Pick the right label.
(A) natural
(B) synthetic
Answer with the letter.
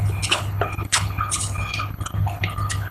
B